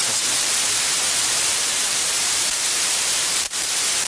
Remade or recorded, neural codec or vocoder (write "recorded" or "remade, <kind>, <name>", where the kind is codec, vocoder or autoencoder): remade, vocoder, BigVGAN v2